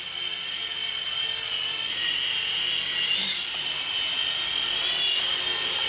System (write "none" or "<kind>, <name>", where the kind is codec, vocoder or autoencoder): none